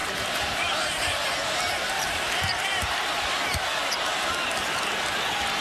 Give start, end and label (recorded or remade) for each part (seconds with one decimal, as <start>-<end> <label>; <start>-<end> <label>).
0.0-3.3 remade; 3.3-5.6 recorded